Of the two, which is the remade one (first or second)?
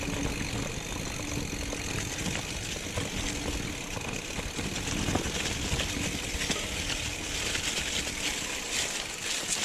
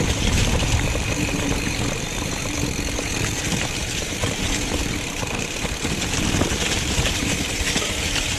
second